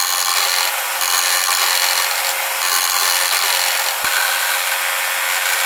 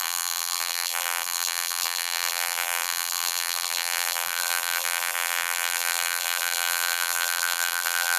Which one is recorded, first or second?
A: first